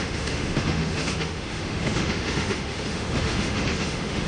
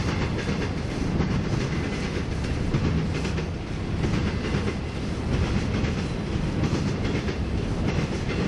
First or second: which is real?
second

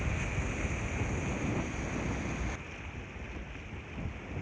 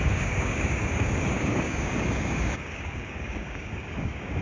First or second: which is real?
first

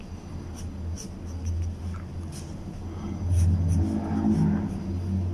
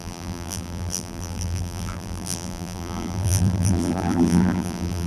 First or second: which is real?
first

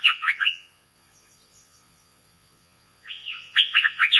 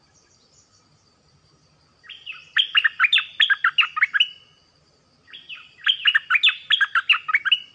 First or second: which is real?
second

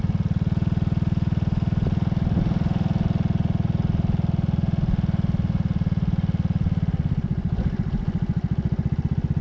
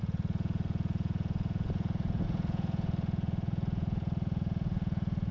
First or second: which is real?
first